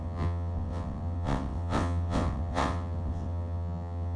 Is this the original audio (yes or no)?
no